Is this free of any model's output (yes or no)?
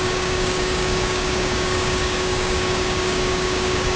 no